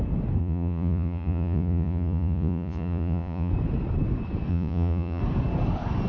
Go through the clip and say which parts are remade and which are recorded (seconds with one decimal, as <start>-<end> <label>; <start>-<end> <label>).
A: 0.0-0.4 recorded; 0.4-3.5 remade; 3.5-4.5 recorded; 4.5-5.2 remade; 5.2-6.1 recorded